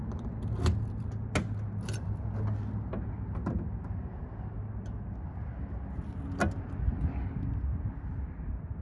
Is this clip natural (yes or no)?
yes